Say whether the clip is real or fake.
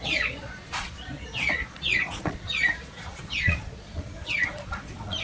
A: fake